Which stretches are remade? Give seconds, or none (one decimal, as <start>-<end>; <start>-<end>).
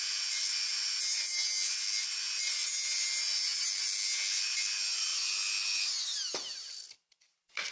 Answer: none